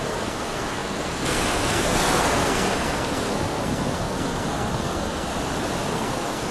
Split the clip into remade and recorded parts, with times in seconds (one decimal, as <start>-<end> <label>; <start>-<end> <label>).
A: 0.0-5.3 remade; 5.3-5.9 recorded; 5.9-6.5 remade